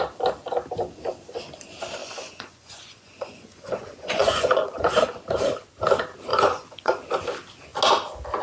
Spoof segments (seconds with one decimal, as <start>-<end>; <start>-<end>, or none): 2.0-4.9; 6.3-7.0